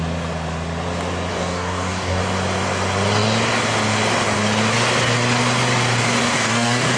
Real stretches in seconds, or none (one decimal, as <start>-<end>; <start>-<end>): 0.0-1.3; 2.2-6.2